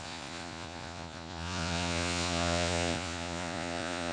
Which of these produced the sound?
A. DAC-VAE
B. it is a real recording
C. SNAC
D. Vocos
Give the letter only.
D